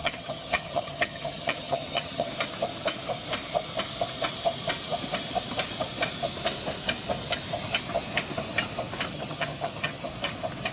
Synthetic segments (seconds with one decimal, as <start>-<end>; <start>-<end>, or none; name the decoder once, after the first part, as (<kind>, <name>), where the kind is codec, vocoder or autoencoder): 0.0-2.3 (vocoder, HiFi-GAN); 9.1-10.1